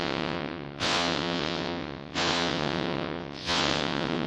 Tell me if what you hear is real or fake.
fake